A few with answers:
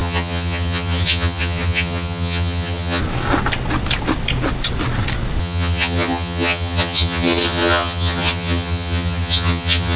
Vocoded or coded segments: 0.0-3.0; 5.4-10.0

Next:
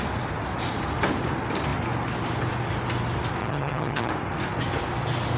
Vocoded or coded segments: 3.4-4.1

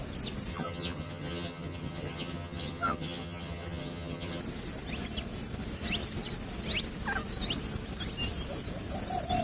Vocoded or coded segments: 0.5-4.4

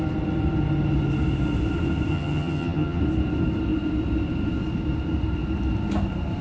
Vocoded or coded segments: 2.1-3.0

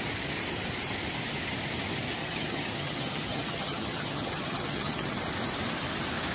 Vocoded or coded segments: 2.2-5.2

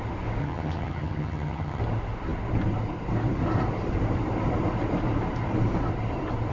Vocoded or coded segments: 0.4-1.8

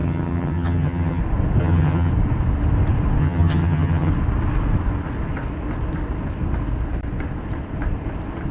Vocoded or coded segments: 0.0-1.2; 1.6-2.1; 3.2-4.1

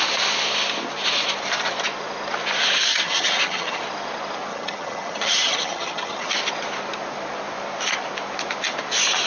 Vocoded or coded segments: 2.9-3.8; 4.5-6.3